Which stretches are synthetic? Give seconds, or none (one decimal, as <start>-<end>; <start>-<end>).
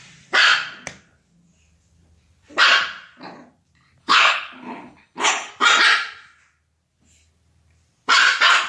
4.0-5.5